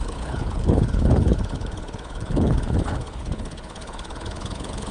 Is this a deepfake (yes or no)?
yes